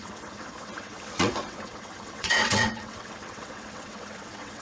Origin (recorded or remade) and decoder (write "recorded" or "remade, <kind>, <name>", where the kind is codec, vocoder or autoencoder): remade, vocoder, WaveNeXt